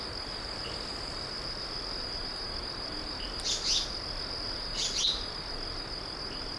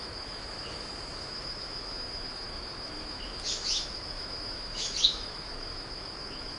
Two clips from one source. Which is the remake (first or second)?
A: second